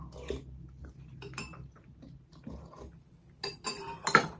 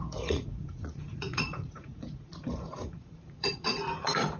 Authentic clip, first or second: first